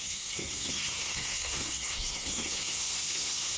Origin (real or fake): fake